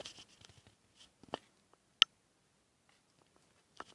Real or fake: real